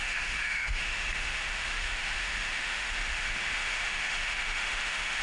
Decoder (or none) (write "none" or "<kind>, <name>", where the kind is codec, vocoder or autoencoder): autoencoder, DAC-VAE